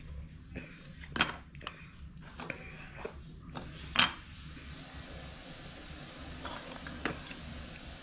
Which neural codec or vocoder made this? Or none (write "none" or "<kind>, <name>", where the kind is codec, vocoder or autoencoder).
none